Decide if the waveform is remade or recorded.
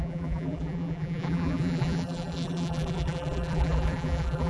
remade